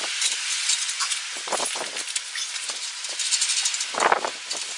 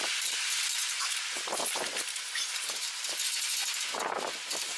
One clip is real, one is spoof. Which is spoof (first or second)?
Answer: second